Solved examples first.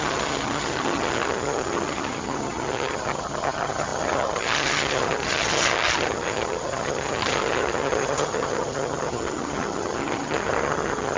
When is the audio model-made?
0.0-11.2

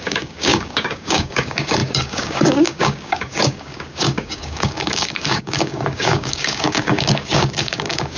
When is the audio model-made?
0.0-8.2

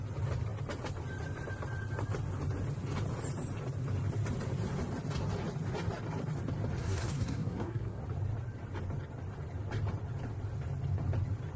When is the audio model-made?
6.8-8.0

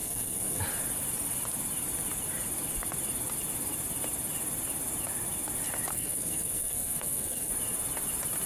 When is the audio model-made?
0.0-0.6; 5.9-7.5

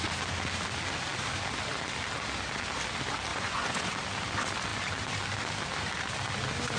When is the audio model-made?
3.3-3.9

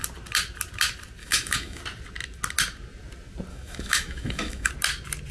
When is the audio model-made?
1.2-1.8; 3.5-4.7

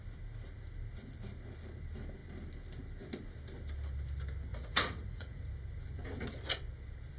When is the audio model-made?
4.5-5.5